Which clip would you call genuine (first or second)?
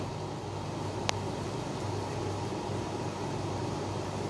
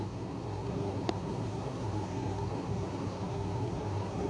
first